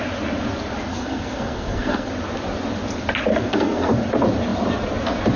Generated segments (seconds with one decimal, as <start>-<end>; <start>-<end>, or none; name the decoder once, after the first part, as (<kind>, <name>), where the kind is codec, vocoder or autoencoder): 0.9-2.1 (codec, SNAC); 3.3-3.9